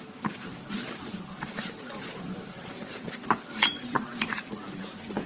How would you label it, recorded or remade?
remade